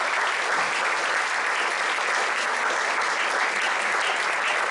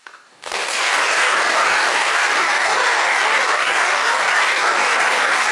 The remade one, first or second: second